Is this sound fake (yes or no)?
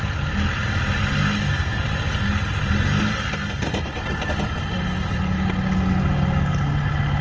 no